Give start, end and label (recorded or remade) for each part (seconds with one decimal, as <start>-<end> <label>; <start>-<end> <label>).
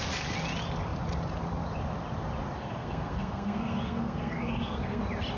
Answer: 0.0-2.6 recorded; 2.6-5.0 remade; 5.0-5.4 recorded